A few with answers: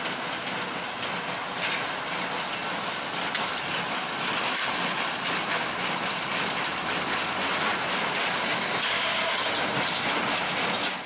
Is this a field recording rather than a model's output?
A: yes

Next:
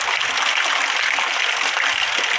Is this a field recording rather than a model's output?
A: yes